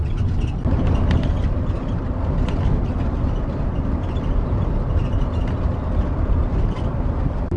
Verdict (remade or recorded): recorded